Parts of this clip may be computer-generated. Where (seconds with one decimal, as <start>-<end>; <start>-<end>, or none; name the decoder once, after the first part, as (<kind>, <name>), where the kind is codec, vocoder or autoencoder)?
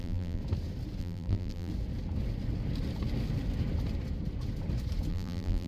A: 0.0-0.4 (vocoder, BigVGAN v2); 1.0-1.7; 5.1-5.7